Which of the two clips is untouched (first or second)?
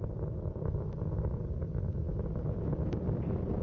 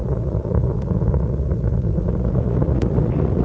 first